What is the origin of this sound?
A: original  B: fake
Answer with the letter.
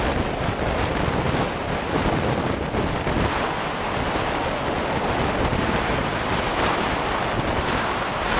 A